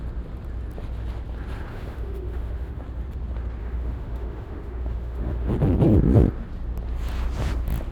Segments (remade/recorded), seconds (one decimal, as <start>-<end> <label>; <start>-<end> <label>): 0.0-1.7 recorded; 1.7-2.8 remade; 2.8-3.6 recorded; 3.6-5.5 remade; 5.5-7.9 recorded